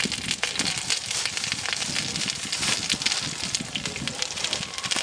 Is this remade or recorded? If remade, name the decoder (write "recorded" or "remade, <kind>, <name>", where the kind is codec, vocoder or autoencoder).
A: recorded